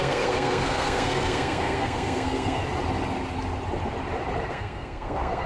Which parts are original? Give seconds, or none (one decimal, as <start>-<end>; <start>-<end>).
2.6-4.5